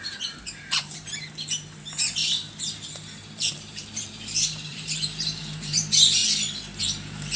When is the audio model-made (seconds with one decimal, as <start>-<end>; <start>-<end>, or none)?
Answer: 0.0-2.2; 3.5-6.2; 6.8-7.4